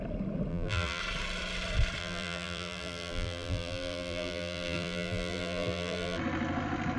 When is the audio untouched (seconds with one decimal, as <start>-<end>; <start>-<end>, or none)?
0.0-0.5; 1.0-2.0; 6.2-7.0